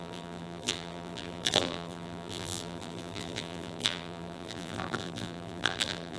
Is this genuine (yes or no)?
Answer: no